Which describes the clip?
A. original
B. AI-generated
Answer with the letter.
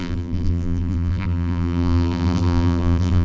B